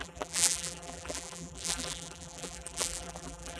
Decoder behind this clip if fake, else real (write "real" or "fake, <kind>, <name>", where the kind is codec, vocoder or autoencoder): fake, vocoder, BigVGAN v2